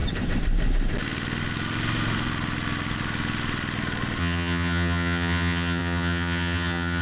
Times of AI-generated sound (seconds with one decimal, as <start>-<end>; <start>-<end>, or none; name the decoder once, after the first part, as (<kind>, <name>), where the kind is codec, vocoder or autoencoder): 4.2-7.0 (vocoder, HiFi-GAN)